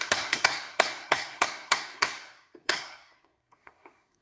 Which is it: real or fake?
fake